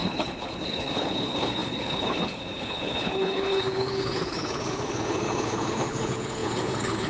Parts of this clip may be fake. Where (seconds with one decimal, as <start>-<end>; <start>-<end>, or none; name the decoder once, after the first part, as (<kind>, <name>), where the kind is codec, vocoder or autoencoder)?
0.0-7.1 (codec, HILCodec)

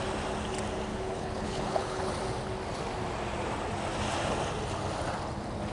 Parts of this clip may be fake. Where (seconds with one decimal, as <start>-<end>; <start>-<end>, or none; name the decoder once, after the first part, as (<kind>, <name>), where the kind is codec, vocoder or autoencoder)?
0.9-2.1 (codec, HILCodec)

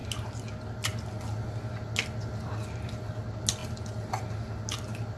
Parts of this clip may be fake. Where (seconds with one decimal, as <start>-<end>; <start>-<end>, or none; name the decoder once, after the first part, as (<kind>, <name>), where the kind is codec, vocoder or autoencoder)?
none

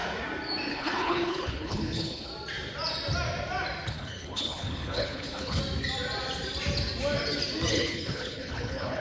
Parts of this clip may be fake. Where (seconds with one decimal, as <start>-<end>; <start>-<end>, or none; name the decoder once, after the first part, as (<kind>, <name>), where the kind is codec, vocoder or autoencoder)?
0.7-2.3 (codec, HILCodec); 3.9-5.6; 7.7-9.0

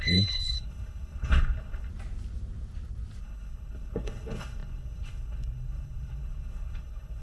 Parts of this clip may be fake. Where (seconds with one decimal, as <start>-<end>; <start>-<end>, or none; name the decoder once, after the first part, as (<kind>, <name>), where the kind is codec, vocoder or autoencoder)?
0.0-1.9 (codec, HILCodec); 3.2-7.2

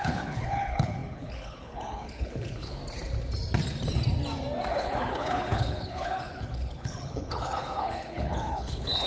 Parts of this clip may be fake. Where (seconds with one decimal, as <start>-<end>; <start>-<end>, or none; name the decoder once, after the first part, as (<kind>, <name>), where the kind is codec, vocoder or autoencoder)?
0.0-2.8 (codec, HILCodec); 4.7-9.1